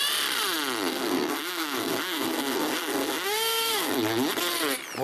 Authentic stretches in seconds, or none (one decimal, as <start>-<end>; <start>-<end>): 0.0-0.9; 3.9-5.0